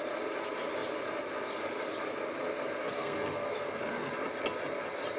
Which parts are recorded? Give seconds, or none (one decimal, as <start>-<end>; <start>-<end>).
0.0-2.8; 4.1-5.2